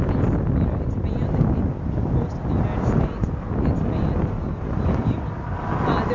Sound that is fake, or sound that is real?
real